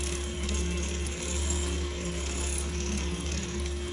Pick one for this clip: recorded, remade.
remade